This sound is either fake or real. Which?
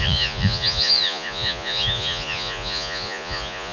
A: fake